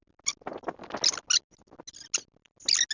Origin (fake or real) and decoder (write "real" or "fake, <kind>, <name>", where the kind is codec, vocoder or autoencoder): real